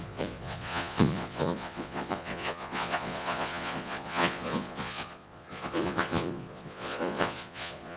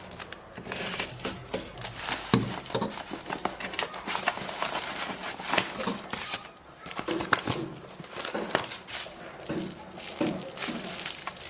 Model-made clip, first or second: first